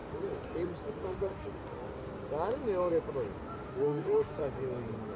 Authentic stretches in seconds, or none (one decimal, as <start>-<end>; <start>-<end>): 0.0-1.1; 1.6-3.7; 4.4-5.2